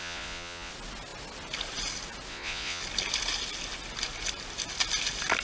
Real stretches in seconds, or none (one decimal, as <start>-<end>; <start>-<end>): 0.7-2.3; 2.8-5.4